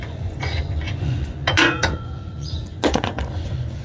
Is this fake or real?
fake